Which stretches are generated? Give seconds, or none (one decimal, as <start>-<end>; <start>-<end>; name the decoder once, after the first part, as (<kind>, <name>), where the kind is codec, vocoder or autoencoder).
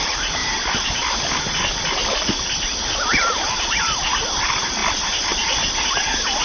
none